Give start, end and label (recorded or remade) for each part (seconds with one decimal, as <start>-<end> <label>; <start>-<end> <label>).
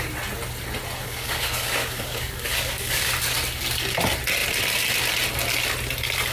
0.0-1.0 recorded; 1.0-3.1 remade; 3.1-6.3 recorded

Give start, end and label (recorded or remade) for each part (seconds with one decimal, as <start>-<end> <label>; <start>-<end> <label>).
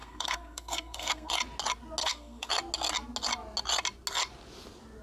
0.0-1.3 remade; 1.3-2.0 recorded; 2.0-2.5 remade; 2.5-5.0 recorded